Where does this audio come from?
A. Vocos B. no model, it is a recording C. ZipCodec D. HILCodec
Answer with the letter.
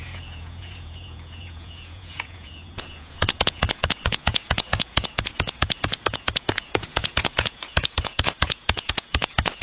A